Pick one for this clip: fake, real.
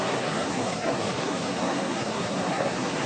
fake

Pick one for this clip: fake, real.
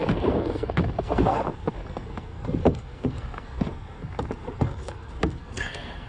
fake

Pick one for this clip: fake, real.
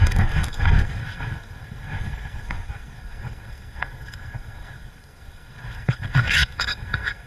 fake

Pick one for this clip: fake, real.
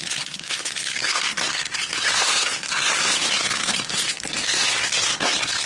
fake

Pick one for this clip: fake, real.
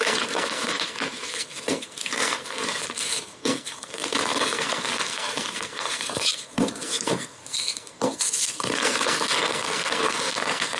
fake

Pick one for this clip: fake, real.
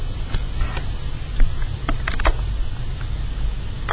real